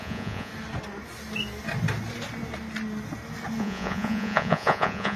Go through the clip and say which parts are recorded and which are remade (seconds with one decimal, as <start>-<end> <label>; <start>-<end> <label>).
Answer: 0.0-0.5 remade; 0.5-3.6 recorded; 3.6-5.2 remade